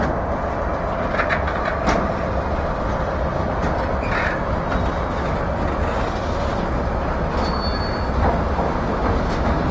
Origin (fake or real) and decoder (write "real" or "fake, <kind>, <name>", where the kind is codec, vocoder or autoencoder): real